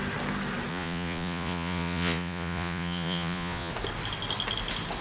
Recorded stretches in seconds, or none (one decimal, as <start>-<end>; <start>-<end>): 0.0-0.7; 3.7-5.0